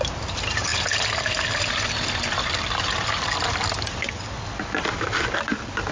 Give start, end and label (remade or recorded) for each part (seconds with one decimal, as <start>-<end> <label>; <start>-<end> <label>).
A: 0.0-5.9 recorded